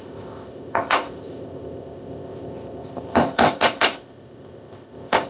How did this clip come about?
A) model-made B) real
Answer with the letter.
A